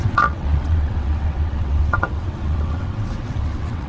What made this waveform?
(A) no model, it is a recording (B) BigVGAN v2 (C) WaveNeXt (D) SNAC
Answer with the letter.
C